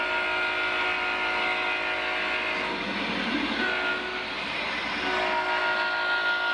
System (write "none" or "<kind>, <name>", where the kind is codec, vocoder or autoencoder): none